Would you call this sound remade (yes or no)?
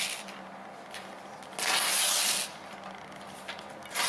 no